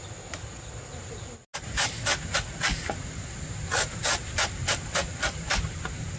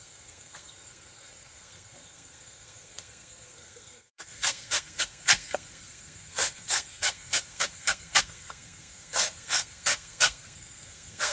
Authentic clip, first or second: first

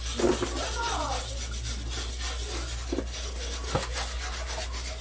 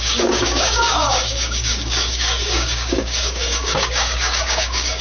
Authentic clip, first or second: first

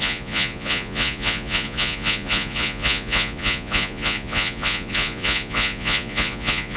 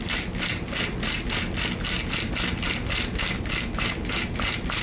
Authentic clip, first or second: second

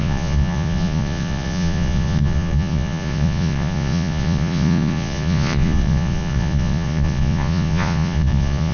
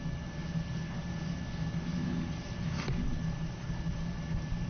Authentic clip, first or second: second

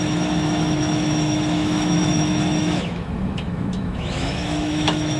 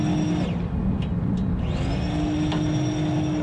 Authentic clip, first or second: second